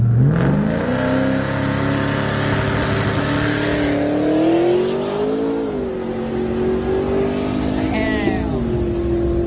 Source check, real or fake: real